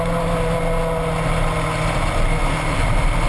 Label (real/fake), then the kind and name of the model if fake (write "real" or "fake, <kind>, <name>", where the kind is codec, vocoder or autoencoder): real